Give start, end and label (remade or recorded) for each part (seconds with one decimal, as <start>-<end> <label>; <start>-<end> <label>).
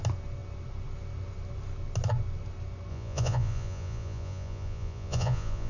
0.0-2.9 recorded; 2.9-5.7 remade